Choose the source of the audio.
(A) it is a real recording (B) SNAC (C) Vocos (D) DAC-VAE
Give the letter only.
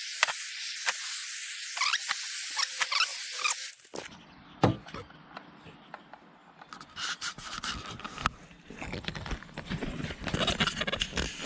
A